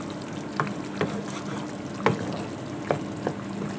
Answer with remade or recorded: recorded